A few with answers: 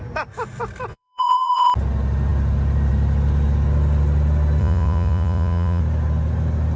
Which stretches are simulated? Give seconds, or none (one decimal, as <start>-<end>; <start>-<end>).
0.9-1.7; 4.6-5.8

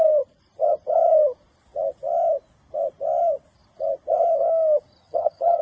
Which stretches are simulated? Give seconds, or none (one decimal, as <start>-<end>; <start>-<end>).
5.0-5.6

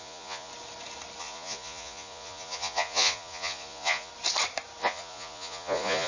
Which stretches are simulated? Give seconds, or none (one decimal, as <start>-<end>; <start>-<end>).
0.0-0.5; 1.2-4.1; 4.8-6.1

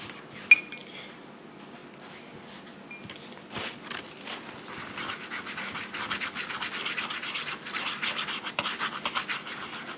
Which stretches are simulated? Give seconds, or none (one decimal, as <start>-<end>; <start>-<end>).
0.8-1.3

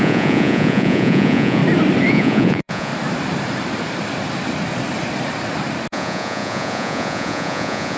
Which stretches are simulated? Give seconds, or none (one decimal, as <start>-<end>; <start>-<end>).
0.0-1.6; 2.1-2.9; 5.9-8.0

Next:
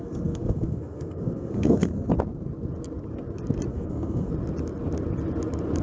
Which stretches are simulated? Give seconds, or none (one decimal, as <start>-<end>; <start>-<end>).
0.0-2.1; 3.7-4.3

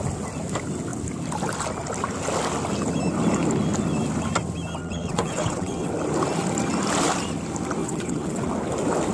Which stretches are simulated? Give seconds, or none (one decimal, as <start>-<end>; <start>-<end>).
4.8-5.9; 7.8-8.5